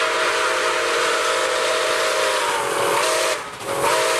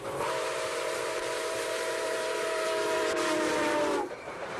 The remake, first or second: second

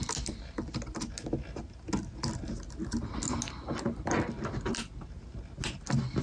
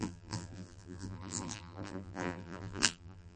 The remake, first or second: second